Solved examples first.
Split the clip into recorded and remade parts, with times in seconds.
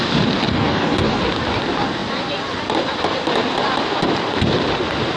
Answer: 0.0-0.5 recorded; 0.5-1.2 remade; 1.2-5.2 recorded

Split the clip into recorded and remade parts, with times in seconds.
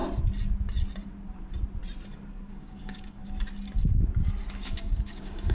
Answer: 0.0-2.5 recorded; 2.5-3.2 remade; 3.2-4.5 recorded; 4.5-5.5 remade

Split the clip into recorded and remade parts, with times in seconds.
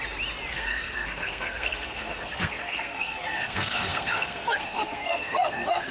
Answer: 0.0-0.5 recorded; 0.5-5.9 remade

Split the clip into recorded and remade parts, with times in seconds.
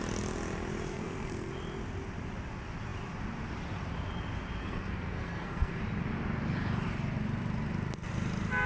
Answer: 0.0-0.9 recorded; 0.9-1.5 remade; 1.5-4.6 recorded; 4.6-5.8 remade; 5.8-8.7 recorded